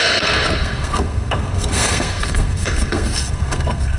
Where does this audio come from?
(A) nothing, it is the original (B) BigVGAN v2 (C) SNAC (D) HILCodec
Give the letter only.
C